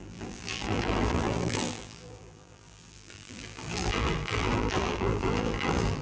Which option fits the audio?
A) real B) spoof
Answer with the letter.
B